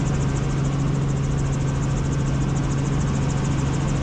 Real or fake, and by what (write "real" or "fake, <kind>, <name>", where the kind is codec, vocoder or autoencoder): real